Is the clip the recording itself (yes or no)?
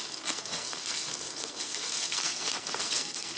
no